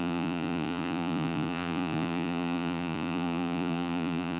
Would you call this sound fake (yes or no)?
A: yes